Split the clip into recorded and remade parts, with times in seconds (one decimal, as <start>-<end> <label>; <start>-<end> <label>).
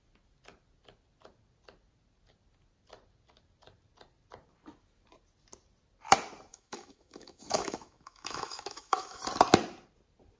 0.0-6.5 recorded; 6.5-9.2 remade; 9.2-10.4 recorded